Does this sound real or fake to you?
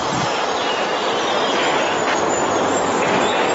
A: real